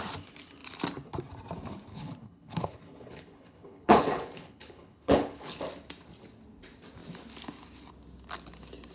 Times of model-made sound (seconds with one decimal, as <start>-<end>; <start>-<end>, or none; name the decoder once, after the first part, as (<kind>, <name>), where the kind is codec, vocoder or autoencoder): 1.9-5.6 (codec, HILCodec)